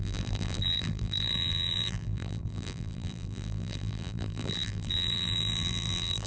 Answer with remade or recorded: remade